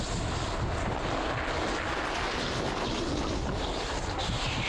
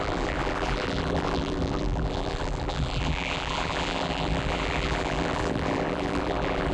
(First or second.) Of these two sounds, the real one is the first